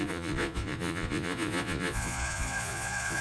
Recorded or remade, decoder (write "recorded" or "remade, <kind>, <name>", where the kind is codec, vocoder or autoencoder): remade, vocoder, Vocos